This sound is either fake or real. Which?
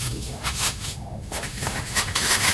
fake